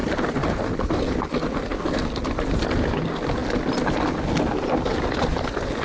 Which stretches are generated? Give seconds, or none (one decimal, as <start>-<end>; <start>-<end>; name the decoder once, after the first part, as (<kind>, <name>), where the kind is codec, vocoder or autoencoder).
none